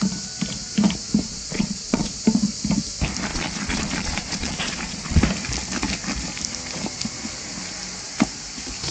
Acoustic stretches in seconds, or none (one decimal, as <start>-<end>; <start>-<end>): 0.0-1.3; 2.2-3.3; 5.2-8.9